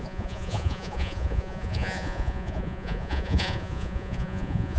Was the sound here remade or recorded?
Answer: remade